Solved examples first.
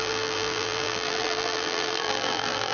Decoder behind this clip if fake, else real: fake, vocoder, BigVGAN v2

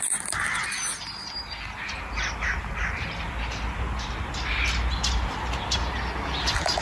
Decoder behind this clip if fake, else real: real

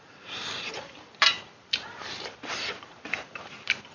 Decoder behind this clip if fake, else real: fake, vocoder, BigVGAN v2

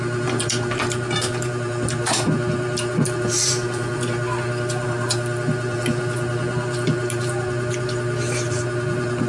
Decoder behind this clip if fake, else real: fake, vocoder, BigVGAN v2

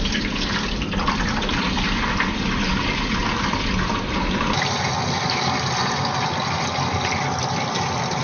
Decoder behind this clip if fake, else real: fake, vocoder, BigVGAN v2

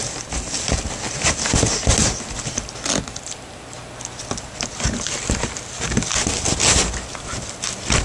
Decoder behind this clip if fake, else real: real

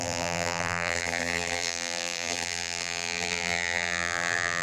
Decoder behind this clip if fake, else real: fake, vocoder, BigVGAN v2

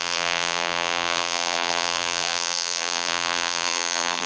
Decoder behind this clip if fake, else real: fake, vocoder, BigVGAN v2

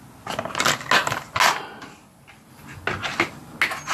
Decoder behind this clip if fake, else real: real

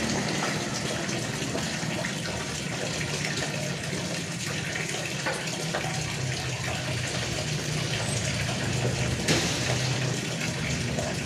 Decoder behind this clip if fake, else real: fake, vocoder, BigVGAN v2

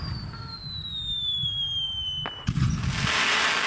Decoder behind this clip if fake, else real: real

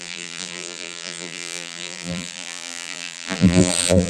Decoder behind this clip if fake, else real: fake, vocoder, BigVGAN v2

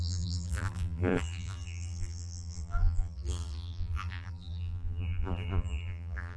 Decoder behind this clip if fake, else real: fake, vocoder, BigVGAN v2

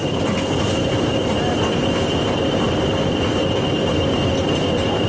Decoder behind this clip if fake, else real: real